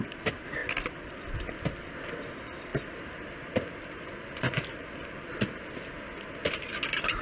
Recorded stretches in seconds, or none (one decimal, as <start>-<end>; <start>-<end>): 0.0-7.2